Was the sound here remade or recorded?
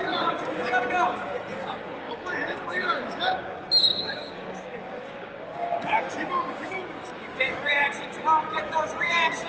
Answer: remade